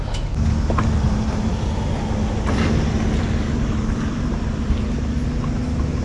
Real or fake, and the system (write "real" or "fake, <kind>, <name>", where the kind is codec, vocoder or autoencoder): real